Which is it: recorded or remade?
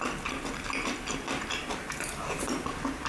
recorded